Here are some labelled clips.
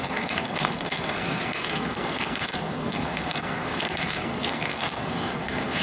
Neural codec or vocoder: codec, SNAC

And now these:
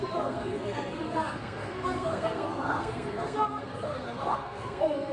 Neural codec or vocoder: codec, SNAC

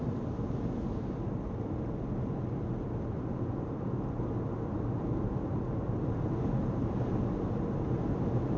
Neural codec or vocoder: none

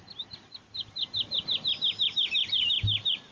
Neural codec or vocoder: none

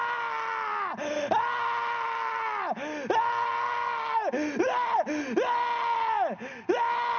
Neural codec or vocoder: none